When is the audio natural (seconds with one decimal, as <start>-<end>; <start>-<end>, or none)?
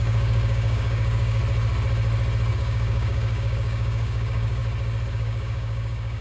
1.4-2.5; 4.6-5.1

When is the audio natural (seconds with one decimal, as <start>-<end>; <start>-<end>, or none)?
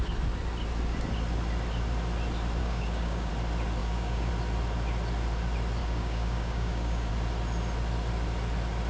0.0-2.6; 3.3-3.8; 4.3-5.8; 7.1-8.9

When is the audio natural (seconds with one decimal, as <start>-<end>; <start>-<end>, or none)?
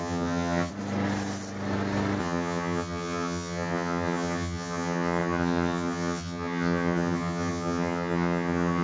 0.7-2.2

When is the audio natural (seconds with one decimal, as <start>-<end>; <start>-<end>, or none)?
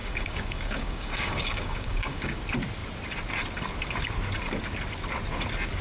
2.4-5.8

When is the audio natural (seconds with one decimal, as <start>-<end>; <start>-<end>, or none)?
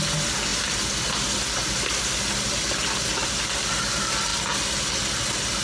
0.0-5.6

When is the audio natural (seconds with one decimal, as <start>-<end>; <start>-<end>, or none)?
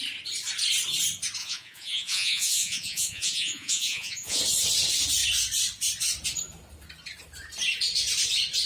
0.0-1.4; 4.4-8.7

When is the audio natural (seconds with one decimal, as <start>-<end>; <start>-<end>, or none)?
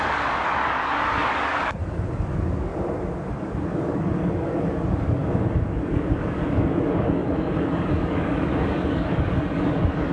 2.7-3.3